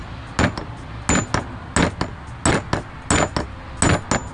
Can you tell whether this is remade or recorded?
recorded